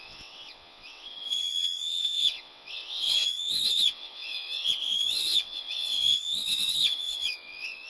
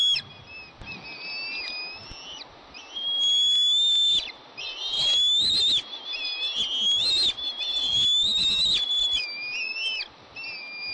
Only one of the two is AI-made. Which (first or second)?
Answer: first